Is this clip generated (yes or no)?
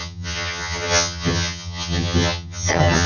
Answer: yes